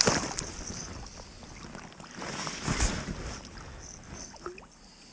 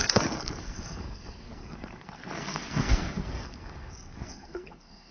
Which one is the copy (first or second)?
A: second